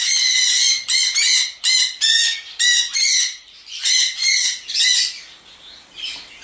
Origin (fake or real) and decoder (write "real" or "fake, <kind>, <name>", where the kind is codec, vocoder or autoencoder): fake, vocoder, BigVGAN v2